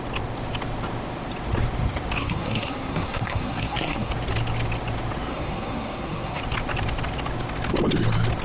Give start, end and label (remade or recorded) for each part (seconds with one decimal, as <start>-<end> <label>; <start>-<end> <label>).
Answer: 0.0-2.2 recorded; 2.2-4.1 remade; 4.1-5.3 recorded; 5.3-6.4 remade; 6.4-8.4 recorded